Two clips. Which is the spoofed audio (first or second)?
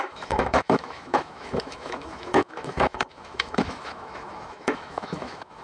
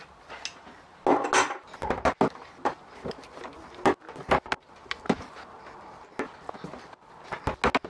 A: first